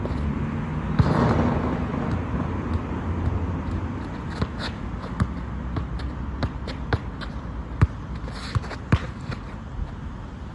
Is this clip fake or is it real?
real